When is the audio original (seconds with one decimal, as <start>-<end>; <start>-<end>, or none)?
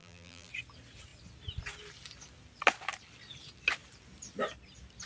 0.5-5.1